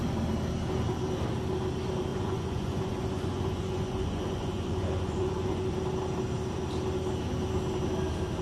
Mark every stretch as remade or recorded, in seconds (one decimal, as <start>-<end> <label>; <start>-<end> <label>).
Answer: 0.0-2.1 recorded; 2.1-5.7 remade; 5.7-8.4 recorded